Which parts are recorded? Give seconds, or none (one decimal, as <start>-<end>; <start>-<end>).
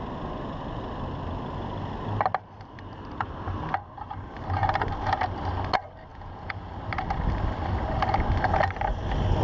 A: 0.0-6.1; 6.7-9.4